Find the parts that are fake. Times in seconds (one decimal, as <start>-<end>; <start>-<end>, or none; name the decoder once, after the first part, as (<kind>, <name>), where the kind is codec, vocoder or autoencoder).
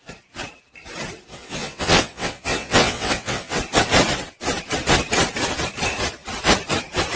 1.3-3.6 (vocoder, WaveNeXt)